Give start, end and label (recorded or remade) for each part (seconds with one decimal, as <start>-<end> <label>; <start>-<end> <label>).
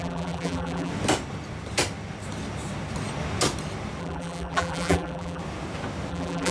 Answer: 0.0-0.9 remade; 0.9-4.0 recorded; 4.0-5.4 remade; 5.4-6.1 recorded; 6.1-6.5 remade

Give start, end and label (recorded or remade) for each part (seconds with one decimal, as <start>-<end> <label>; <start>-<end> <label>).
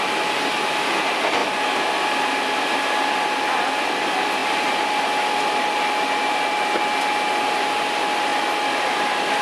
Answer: 0.0-9.4 recorded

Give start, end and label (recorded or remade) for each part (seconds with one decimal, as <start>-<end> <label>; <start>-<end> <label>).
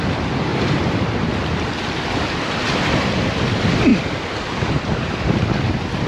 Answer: 0.0-0.5 recorded; 0.5-2.2 remade; 2.2-3.9 recorded; 3.9-5.4 remade; 5.4-6.1 recorded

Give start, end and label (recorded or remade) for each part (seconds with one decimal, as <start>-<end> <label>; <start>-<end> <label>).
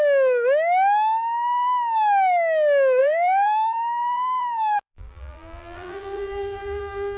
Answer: 0.0-3.0 recorded; 3.0-7.2 remade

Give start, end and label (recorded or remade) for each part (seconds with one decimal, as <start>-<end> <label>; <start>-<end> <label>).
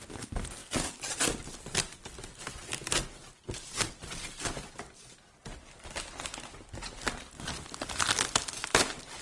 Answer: 0.0-9.2 recorded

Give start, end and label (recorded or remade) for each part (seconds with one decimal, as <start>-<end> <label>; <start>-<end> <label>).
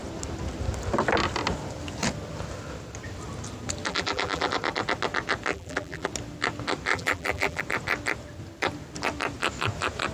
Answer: 0.0-3.9 recorded; 3.9-4.5 remade; 4.5-5.5 recorded; 5.5-6.1 remade; 6.1-6.9 recorded; 6.9-7.6 remade; 7.6-10.1 recorded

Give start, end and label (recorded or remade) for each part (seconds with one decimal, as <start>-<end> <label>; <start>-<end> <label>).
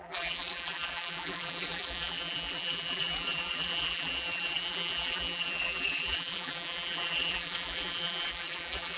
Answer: 0.0-9.0 remade